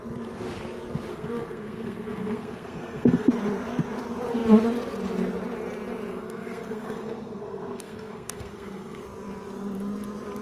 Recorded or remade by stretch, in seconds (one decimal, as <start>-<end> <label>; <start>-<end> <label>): 0.0-1.1 recorded; 1.1-3.3 remade; 3.3-6.1 recorded; 6.1-9.0 remade; 9.0-10.4 recorded